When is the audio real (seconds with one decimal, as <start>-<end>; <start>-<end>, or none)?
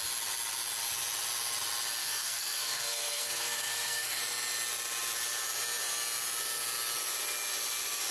0.0-2.0; 4.2-8.1